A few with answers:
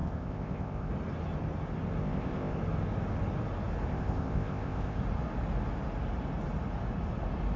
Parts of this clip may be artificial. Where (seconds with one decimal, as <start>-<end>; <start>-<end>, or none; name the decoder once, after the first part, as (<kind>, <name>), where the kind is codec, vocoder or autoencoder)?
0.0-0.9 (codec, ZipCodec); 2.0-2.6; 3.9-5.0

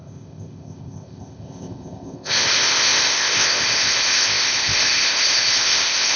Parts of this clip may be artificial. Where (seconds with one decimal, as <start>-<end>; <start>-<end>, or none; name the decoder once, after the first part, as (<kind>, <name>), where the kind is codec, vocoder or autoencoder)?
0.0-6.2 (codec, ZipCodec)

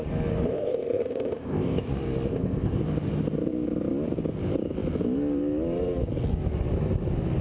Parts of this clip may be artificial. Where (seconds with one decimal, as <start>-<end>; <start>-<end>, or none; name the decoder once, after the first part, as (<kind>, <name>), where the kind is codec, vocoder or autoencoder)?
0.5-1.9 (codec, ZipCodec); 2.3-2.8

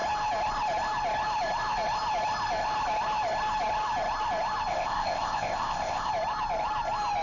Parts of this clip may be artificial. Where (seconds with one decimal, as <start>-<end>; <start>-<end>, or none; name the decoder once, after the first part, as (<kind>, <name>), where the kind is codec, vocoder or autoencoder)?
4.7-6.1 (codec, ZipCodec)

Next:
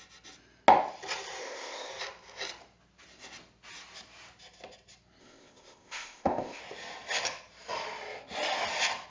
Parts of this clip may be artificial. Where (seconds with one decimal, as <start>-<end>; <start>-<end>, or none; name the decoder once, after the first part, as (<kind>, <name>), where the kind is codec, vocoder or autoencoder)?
1.4-1.9 (codec, ZipCodec); 5.2-6.6

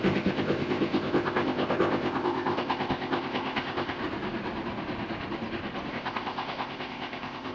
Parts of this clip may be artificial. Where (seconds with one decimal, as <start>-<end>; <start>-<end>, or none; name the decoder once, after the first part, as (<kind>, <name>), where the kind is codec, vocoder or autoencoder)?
0.0-4.0 (codec, ZipCodec); 5.9-7.5

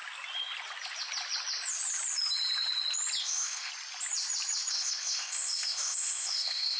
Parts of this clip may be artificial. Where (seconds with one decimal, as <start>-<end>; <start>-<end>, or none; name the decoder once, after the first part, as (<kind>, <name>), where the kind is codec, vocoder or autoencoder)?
3.2-3.7 (codec, ZipCodec); 4.7-6.8